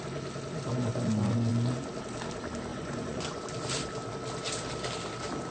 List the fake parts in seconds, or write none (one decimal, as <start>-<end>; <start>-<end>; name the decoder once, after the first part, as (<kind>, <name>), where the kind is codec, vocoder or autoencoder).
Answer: 2.7-3.4 (vocoder, Vocos)